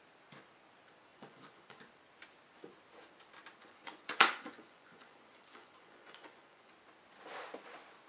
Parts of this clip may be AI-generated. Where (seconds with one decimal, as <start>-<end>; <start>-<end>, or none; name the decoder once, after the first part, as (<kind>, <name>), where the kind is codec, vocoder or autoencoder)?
1.1-1.8 (vocoder, Vocos); 3.6-6.7